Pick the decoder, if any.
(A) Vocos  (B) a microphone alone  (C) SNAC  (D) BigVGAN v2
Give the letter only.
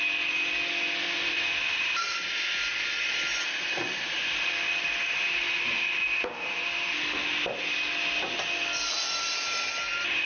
B